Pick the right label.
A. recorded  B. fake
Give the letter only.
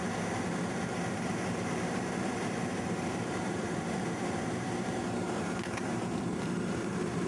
B